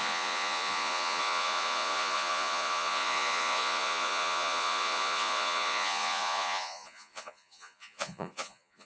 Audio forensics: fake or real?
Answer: fake